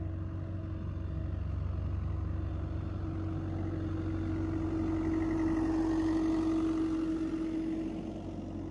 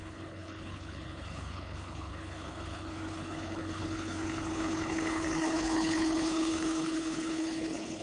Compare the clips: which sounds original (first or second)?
first